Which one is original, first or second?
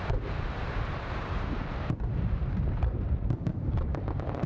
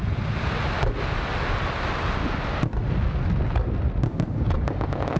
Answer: second